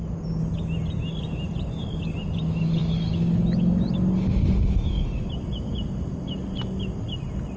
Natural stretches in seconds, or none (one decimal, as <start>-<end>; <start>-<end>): 0.0-7.6